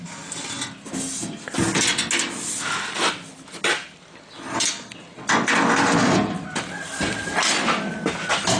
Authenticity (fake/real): real